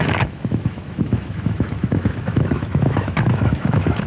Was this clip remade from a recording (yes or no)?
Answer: yes